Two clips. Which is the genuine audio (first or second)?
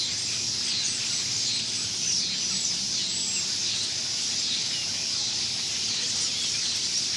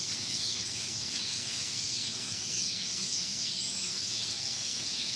first